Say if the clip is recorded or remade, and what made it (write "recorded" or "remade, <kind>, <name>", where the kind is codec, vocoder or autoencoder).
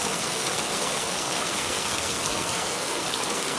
remade, codec, SNAC